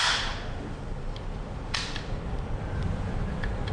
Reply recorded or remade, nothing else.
remade